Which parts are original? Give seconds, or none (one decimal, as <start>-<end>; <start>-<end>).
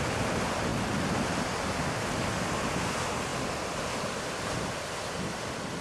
0.0-5.8